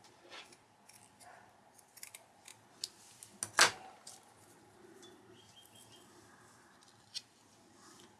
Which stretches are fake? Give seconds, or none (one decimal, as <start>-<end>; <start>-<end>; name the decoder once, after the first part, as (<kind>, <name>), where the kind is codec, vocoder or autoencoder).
none